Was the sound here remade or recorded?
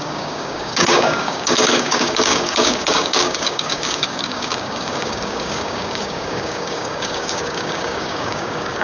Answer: remade